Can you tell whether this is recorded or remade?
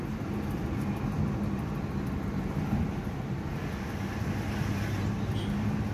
recorded